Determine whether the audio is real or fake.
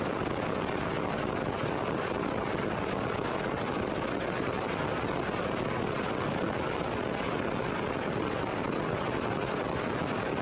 real